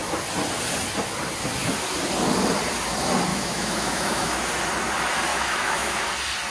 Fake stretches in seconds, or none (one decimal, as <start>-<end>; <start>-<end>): 3.3-4.5; 5.3-6.1